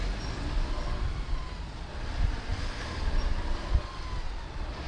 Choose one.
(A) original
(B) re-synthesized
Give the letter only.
A